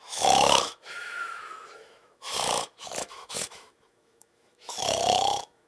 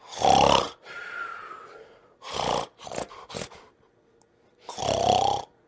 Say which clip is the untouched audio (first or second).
second